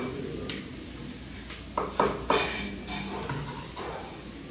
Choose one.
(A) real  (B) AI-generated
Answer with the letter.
A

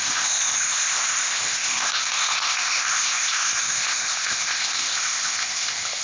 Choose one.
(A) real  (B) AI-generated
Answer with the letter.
B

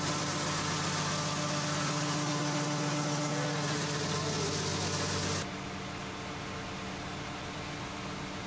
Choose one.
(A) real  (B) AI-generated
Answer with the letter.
A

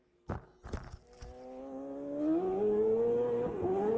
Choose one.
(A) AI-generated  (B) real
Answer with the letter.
B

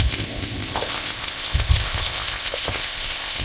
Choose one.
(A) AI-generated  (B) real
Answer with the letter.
A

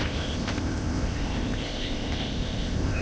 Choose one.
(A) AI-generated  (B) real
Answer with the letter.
A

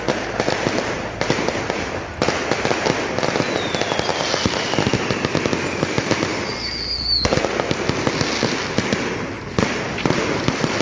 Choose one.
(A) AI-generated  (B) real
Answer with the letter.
B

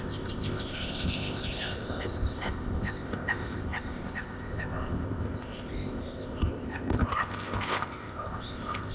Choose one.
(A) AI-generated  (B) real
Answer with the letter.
A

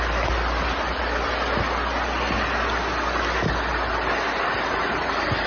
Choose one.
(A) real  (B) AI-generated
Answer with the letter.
A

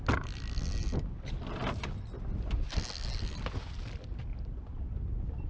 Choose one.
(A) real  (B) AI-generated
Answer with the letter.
A